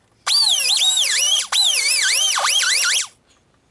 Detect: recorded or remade recorded